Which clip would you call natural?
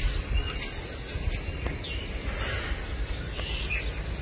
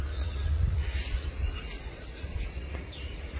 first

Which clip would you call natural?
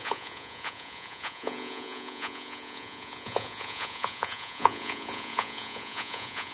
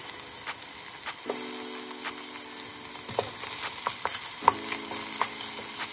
second